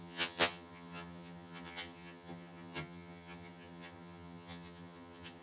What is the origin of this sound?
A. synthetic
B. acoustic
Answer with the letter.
A